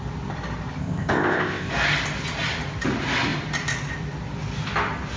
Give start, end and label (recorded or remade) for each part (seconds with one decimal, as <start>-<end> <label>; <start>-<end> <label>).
0.0-0.8 recorded; 0.8-1.7 remade; 1.7-5.2 recorded